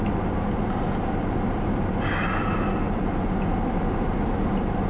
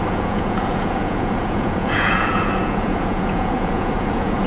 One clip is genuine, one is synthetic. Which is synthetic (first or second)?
second